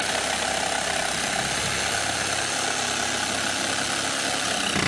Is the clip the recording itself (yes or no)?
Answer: yes